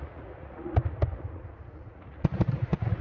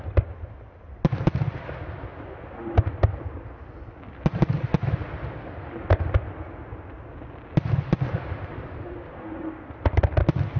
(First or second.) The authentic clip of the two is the second